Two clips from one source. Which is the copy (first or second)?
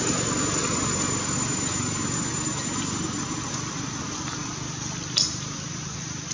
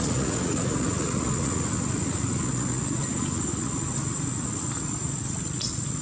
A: second